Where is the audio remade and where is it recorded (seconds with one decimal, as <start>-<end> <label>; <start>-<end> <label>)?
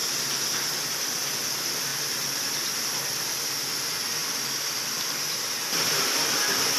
0.0-1.9 recorded; 1.9-2.8 remade; 2.8-4.2 recorded; 4.2-5.2 remade; 5.2-6.8 recorded